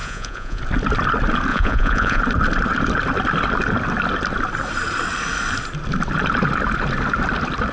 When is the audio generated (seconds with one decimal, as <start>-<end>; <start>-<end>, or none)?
0.0-0.6; 1.5-2.2